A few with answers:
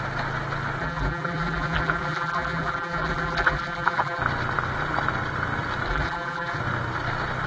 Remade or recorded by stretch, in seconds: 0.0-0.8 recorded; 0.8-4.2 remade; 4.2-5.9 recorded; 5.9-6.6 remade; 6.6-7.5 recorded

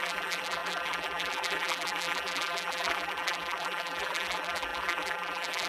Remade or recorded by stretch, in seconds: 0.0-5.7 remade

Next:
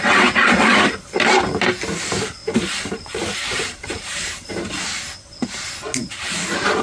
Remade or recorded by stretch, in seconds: 0.0-2.4 recorded; 2.4-4.5 remade; 4.5-6.8 recorded

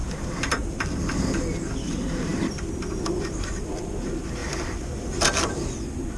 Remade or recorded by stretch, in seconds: 0.0-1.2 remade; 1.2-6.2 recorded